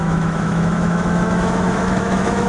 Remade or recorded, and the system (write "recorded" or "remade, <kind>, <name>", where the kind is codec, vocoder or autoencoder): remade, autoencoder, DAC-VAE